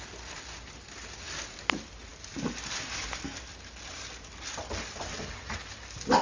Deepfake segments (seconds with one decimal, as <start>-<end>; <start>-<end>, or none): none